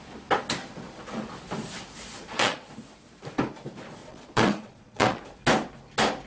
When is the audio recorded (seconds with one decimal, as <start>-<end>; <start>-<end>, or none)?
0.0-2.2; 2.7-4.0; 5.2-6.3